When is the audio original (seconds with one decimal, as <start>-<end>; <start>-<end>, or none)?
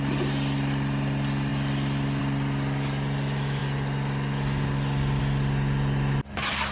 0.0-6.7